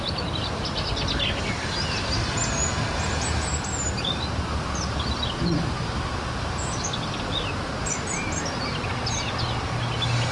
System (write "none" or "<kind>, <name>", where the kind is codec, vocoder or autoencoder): none